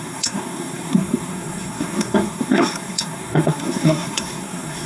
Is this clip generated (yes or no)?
yes